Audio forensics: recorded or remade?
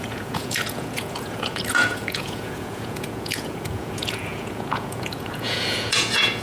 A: remade